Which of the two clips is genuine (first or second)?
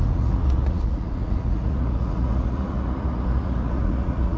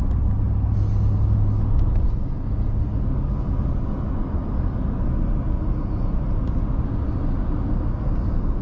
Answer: second